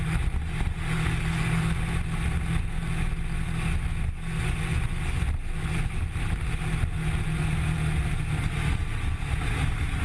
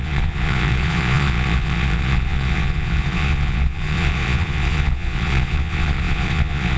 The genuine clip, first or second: first